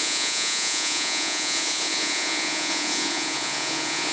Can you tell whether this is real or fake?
fake